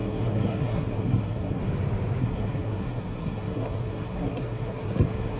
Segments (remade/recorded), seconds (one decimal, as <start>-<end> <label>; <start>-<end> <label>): 0.0-1.6 remade; 1.6-2.2 recorded; 2.2-5.4 remade